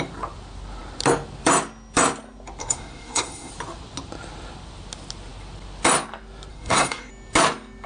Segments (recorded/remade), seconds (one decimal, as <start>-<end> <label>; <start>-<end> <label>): 0.0-2.6 recorded; 2.6-3.5 remade; 3.5-6.5 recorded; 6.5-7.1 remade; 7.1-7.9 recorded

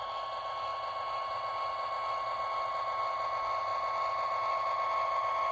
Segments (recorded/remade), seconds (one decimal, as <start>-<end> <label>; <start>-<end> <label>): 0.0-5.5 recorded

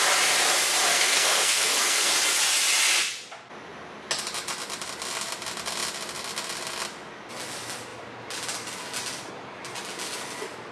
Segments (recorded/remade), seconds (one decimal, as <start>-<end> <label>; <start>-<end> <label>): 0.0-0.9 recorded; 0.9-2.1 remade; 2.1-10.7 recorded